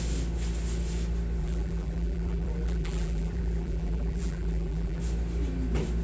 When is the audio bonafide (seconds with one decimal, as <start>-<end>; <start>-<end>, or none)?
0.0-1.4; 5.0-6.0